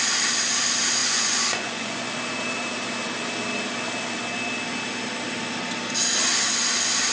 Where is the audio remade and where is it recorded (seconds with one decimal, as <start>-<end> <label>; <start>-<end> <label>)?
0.0-1.0 recorded; 1.0-2.1 remade; 2.1-7.1 recorded